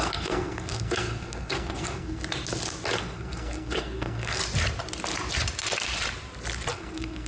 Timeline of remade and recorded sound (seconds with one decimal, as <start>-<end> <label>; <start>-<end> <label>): 0.0-2.2 remade; 2.2-3.0 recorded; 3.0-4.4 remade; 4.4-6.7 recorded; 6.7-7.3 remade